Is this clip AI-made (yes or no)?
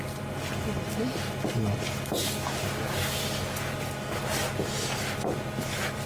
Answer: no